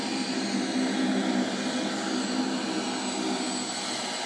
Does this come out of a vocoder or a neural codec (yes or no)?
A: no